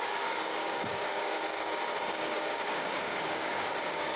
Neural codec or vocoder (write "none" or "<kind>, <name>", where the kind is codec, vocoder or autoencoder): codec, DAC